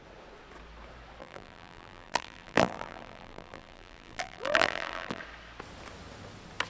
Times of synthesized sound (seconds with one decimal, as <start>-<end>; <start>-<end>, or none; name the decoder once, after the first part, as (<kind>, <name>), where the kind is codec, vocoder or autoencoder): 1.2-5.2 (vocoder, BigVGAN v2)